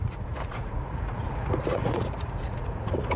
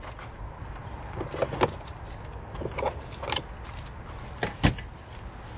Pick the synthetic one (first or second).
first